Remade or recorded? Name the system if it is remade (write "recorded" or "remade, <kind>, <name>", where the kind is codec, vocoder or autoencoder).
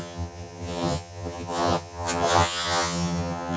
remade, vocoder, HiFi-GAN